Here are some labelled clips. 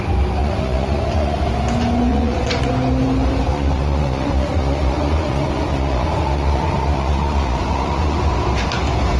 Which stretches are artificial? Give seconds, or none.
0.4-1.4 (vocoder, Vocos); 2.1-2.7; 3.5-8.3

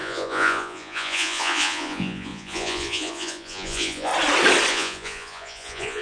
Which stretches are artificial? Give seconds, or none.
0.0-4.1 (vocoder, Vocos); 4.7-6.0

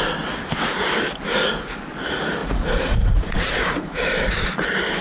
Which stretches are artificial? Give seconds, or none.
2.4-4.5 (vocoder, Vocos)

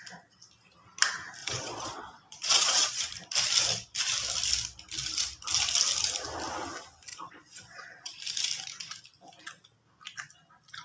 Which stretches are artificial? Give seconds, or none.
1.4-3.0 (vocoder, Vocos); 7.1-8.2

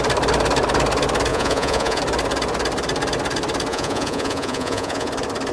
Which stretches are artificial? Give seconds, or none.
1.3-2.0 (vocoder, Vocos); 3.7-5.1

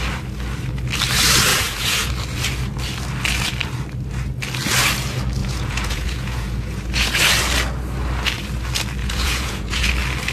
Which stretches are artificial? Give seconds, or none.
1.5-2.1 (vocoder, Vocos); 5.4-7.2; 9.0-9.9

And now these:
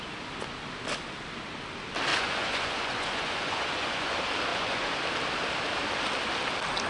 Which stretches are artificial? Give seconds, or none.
2.1-4.1 (vocoder, Vocos); 4.5-5.0

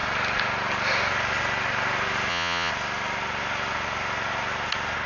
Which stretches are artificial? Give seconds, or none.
2.3-2.7 (vocoder, Vocos)